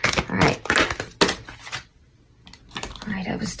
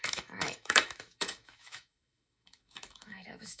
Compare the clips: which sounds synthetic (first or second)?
second